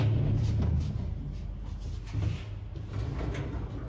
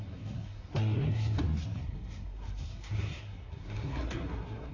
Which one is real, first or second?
first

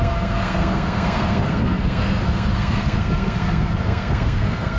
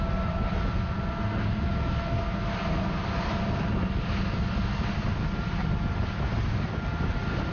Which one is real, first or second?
second